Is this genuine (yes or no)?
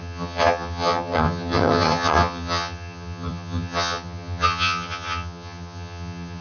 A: no